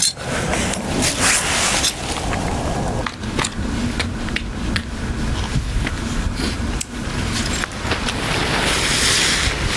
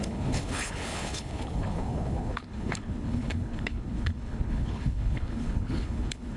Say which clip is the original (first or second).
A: first